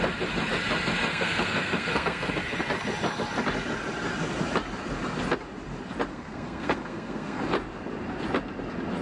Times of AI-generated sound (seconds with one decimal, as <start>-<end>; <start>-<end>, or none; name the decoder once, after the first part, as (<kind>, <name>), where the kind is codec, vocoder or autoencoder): 1.1-2.3 (codec, SNAC); 6.1-7.4